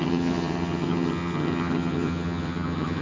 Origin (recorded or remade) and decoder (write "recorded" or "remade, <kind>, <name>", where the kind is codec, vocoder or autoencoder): remade, vocoder, HiFi-GAN